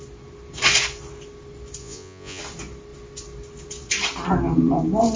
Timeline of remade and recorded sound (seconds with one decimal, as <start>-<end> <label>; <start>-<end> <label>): 0.0-1.8 recorded; 1.8-2.4 remade; 2.4-5.2 recorded